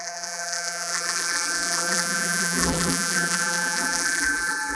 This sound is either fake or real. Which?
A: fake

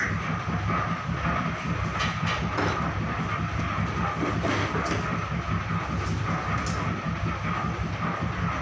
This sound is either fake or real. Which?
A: real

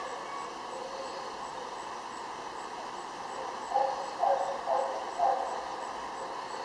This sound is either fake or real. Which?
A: real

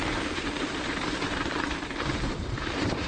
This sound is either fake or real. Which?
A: fake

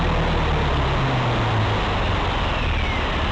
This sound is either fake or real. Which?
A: real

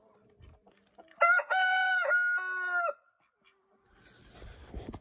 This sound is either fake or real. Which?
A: real